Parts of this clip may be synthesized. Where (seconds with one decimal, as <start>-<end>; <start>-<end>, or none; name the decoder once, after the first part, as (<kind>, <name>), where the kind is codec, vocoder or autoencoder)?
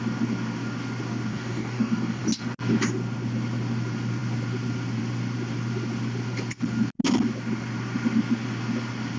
1.3-2.2 (codec, DAC)